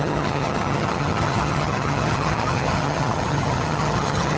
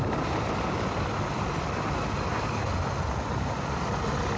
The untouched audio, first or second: second